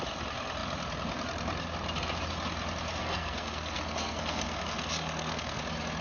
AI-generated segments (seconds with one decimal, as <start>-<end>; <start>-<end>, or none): 3.0-5.6